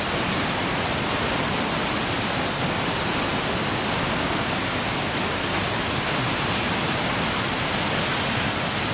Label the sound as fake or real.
real